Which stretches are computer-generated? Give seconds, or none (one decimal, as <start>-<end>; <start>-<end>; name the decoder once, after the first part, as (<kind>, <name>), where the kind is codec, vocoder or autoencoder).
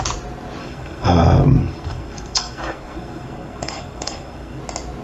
0.6-1.2 (codec, SNAC); 1.6-4.6